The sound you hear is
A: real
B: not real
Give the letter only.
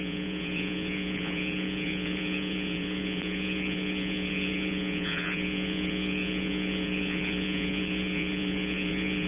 B